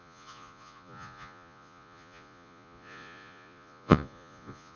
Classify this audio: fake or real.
fake